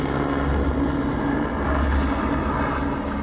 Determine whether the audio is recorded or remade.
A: recorded